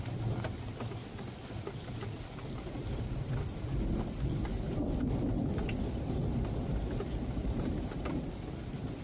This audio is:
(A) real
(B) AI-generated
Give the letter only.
A